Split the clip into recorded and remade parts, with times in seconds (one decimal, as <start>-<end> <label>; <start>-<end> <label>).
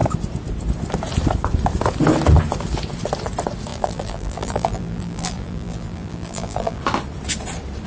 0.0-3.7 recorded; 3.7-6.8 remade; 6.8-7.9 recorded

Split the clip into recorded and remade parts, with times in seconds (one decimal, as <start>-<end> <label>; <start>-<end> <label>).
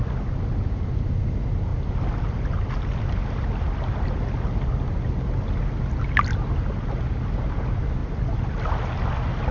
0.0-9.5 recorded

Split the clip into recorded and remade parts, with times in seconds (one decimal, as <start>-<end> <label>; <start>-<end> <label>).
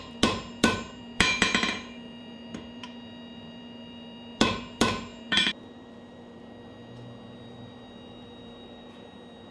0.0-9.5 remade